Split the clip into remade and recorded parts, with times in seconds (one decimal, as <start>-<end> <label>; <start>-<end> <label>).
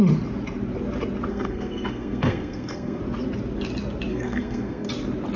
0.0-1.3 recorded; 1.3-3.0 remade; 3.0-4.1 recorded; 4.1-4.9 remade; 4.9-5.4 recorded